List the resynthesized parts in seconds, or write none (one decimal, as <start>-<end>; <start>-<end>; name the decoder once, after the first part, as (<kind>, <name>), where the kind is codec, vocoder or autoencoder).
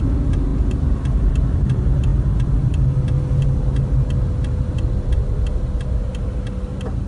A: none